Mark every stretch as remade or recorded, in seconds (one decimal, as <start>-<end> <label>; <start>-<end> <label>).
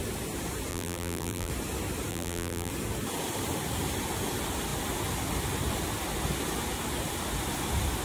0.0-0.7 recorded; 0.7-1.5 remade; 1.5-2.1 recorded; 2.1-2.7 remade; 2.7-8.0 recorded